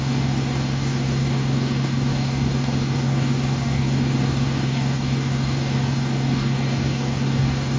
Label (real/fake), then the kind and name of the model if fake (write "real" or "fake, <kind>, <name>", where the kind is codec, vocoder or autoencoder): fake, codec, DAC